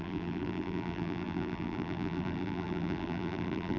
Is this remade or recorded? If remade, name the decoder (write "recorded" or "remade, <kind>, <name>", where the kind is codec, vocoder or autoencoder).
remade, vocoder, BigVGAN v2